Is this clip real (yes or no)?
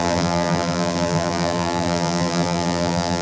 no